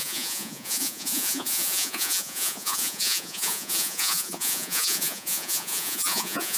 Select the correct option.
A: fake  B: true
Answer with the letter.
A